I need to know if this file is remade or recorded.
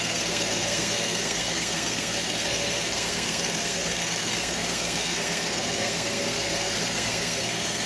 remade